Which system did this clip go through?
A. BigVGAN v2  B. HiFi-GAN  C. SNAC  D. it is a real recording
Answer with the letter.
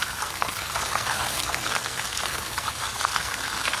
C